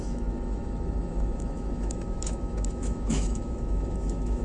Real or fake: fake